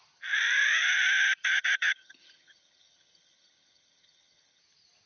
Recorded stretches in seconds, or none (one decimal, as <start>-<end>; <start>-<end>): 0.0-1.5; 4.6-5.1